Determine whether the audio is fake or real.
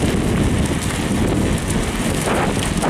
real